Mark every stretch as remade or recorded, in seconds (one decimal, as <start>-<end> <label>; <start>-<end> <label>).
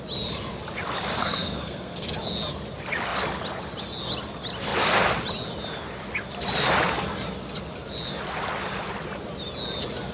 0.0-1.2 recorded; 1.2-2.1 remade; 2.1-10.1 recorded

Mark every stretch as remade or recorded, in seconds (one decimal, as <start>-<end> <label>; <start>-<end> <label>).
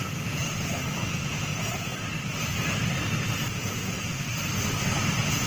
0.0-0.4 remade; 0.4-1.0 recorded; 1.0-1.9 remade; 1.9-3.5 recorded; 3.5-4.3 remade; 4.3-5.1 recorded; 5.1-5.5 remade